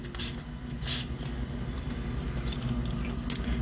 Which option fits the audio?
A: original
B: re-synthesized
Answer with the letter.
A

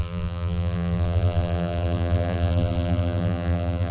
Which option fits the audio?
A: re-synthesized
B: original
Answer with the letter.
A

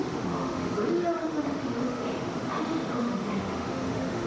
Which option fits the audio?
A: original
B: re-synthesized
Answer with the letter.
B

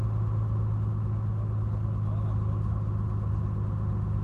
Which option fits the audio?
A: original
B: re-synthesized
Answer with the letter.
A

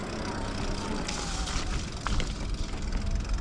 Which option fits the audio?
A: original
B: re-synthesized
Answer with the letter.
A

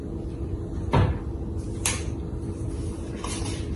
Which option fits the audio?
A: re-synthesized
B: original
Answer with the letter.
B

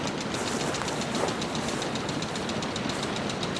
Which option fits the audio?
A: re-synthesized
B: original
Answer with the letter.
B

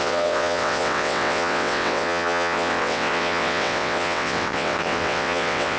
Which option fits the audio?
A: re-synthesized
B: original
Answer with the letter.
A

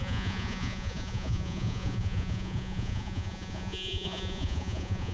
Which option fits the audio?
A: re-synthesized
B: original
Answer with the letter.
A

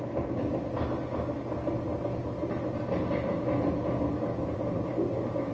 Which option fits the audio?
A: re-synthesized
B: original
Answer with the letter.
B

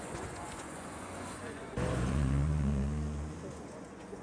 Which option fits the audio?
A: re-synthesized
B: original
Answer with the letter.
A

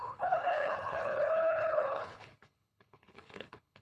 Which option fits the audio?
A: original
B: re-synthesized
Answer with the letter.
B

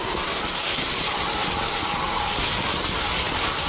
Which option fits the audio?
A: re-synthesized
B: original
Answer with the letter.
B